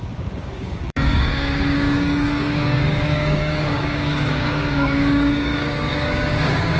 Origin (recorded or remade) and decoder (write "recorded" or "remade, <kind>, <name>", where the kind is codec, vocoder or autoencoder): remade, codec, DAC